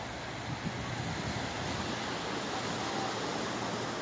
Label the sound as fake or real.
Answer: real